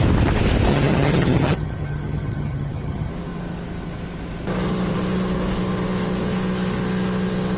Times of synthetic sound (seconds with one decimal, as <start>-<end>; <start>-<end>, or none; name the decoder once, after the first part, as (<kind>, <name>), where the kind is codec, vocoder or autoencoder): 0.7-3.1 (vocoder, HiFi-GAN)

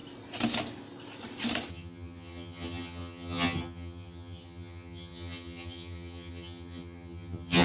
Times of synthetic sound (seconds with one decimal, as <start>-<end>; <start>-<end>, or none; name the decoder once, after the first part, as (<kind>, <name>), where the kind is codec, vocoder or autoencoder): 1.7-7.6 (vocoder, HiFi-GAN)

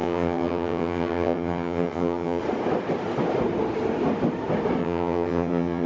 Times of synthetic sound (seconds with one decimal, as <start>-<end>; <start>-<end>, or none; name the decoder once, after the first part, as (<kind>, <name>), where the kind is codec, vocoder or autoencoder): 0.0-2.4 (vocoder, HiFi-GAN); 4.8-5.9

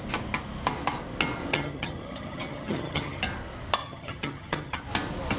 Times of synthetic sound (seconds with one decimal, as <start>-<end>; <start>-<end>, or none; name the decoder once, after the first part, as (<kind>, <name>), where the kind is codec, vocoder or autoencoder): 1.5-3.2 (vocoder, HiFi-GAN); 3.8-4.8